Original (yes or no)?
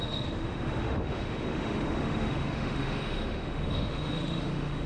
no